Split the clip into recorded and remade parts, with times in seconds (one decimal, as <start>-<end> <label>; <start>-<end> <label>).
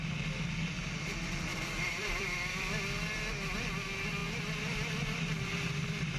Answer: 0.0-1.5 recorded; 1.5-2.8 remade; 2.8-6.2 recorded